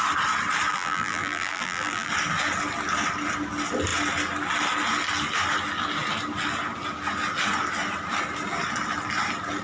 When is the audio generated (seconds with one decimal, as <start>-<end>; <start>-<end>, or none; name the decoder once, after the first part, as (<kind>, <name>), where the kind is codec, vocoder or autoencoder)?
0.7-2.1 (vocoder, BigVGAN v2)

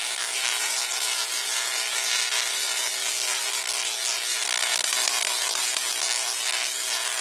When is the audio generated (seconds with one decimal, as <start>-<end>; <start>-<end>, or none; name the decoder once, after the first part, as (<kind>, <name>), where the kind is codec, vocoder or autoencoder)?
0.0-3.1 (vocoder, BigVGAN v2); 4.3-5.9

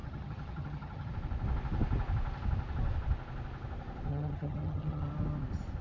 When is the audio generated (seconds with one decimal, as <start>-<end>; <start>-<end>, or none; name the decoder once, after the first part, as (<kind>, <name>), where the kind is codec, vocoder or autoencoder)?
0.0-1.1 (vocoder, HiFi-GAN); 4.1-5.1